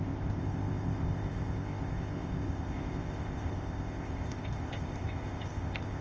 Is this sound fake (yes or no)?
yes